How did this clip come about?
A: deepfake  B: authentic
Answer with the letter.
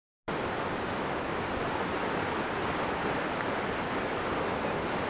B